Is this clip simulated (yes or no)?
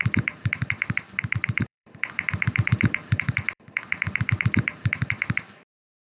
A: yes